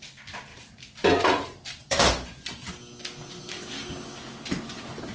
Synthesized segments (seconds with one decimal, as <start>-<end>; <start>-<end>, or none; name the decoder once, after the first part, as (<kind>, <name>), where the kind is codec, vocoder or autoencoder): 0.5-2.7 (vocoder, BigVGAN v2)